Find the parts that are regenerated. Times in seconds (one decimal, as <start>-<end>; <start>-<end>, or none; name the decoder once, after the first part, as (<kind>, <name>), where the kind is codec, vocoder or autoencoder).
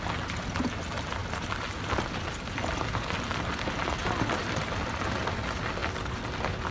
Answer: none